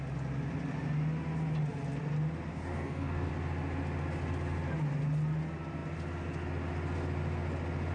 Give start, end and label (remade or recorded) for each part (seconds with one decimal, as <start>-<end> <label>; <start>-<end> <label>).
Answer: 0.0-2.5 recorded; 2.5-3.3 remade; 3.3-7.9 recorded